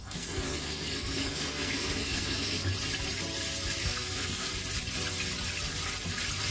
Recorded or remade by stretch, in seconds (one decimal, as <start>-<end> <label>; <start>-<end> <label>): 0.0-2.6 remade; 2.6-3.8 recorded; 3.8-4.5 remade; 4.5-6.5 recorded